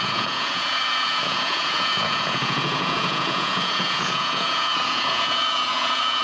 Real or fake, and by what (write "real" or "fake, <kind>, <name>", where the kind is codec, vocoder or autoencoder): fake, vocoder, Vocos